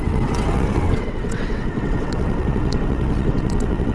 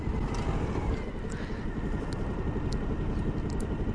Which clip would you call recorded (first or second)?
second